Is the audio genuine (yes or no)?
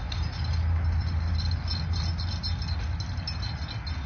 yes